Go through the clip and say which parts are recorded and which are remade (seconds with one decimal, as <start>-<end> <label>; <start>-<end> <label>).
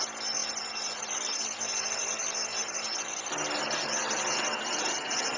0.0-5.4 recorded